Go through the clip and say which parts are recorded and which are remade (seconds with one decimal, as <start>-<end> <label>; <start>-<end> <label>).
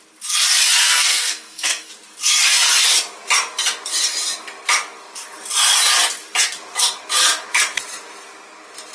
0.0-0.8 recorded; 0.8-1.9 remade; 1.9-8.9 recorded